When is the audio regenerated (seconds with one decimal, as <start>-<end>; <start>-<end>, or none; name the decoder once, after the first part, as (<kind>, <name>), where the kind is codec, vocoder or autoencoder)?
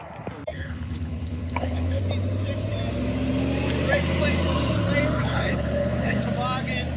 0.5-2.0 (codec, HILCodec); 5.2-6.2